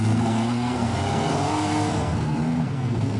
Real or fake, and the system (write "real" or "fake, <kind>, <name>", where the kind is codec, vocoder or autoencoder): fake, codec, SNAC